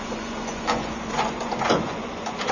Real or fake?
fake